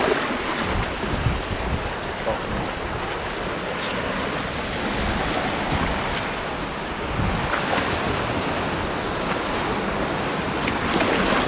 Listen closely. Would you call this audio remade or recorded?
recorded